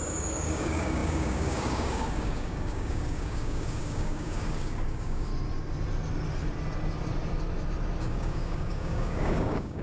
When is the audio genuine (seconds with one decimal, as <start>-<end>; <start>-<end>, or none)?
5.3-8.0